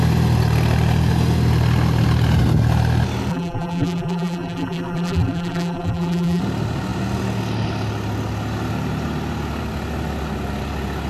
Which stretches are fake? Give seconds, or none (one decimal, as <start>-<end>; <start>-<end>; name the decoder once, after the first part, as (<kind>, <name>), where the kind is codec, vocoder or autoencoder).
3.3-6.4 (vocoder, BigVGAN v2)